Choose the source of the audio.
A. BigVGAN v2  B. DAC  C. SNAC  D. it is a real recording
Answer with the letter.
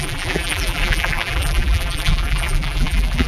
A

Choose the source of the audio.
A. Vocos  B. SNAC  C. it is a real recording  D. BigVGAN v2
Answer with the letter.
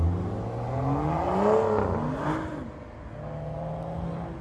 C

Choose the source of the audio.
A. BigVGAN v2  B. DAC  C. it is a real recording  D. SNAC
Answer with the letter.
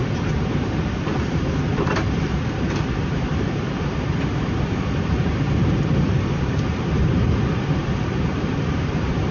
A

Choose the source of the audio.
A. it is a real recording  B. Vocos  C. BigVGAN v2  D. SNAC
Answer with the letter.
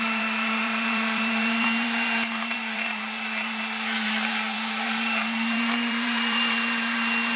C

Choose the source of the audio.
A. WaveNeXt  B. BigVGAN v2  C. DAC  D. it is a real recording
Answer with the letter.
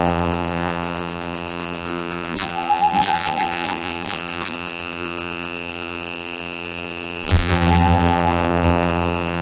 B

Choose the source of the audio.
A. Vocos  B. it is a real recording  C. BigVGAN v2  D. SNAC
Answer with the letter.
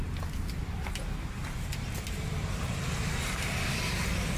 B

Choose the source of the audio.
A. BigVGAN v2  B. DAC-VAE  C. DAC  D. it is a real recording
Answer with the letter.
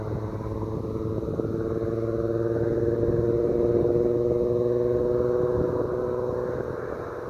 D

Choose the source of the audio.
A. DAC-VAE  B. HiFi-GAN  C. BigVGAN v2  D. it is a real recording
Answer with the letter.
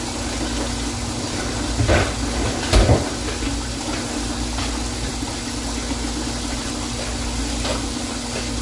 D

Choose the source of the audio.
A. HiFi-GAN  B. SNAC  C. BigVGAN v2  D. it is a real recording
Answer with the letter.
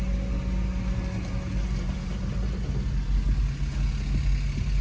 D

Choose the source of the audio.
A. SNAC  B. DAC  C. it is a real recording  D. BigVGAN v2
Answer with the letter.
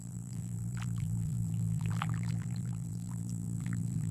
D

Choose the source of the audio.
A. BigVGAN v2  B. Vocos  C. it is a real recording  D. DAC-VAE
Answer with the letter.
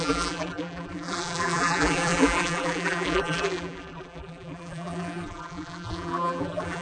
A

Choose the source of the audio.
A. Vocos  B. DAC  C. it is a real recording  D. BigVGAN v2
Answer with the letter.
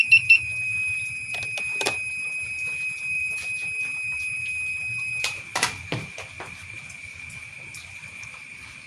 D